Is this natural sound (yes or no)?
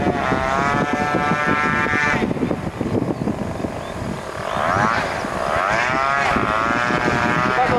yes